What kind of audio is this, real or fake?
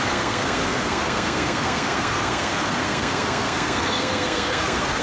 fake